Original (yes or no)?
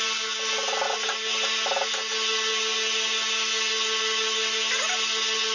yes